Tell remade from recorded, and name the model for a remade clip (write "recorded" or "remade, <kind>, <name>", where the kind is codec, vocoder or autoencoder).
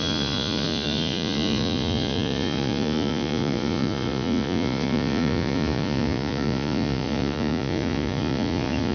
remade, vocoder, Vocos